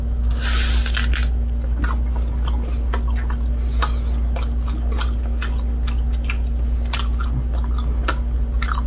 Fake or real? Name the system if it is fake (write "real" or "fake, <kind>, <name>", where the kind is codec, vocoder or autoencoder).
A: real